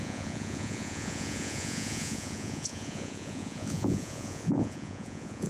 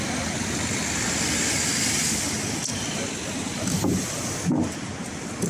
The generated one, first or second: first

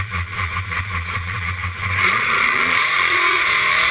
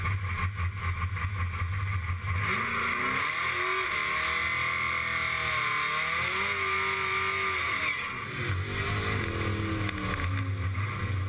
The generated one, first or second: first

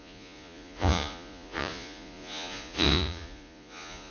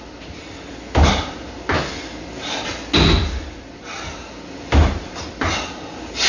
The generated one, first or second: first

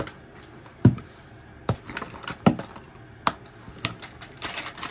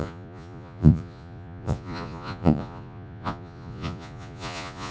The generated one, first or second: second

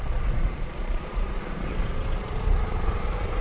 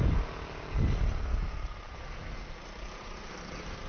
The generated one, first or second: first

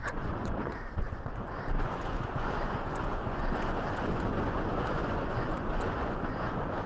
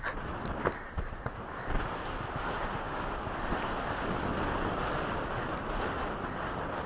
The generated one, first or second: first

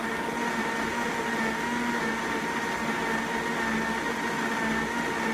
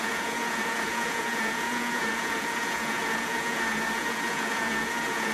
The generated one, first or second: second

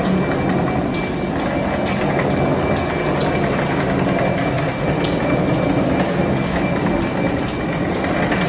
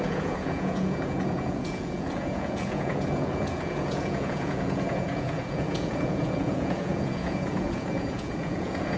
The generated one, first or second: second